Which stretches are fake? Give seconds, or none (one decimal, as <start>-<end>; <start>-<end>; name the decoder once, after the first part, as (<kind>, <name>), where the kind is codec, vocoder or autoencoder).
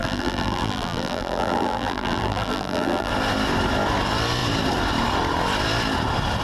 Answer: 0.0-3.1 (vocoder, BigVGAN v2)